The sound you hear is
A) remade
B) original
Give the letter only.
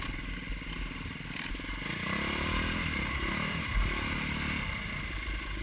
B